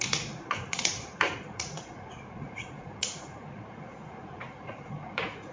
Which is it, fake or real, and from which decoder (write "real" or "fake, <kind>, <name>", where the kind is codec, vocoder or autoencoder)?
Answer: fake, vocoder, Vocos